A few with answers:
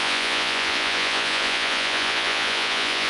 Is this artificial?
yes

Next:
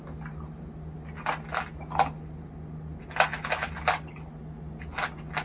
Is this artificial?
no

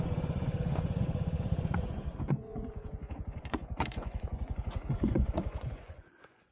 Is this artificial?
yes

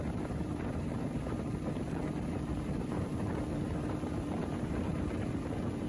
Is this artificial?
yes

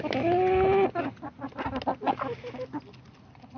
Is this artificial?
no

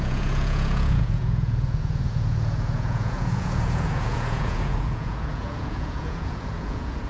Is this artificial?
yes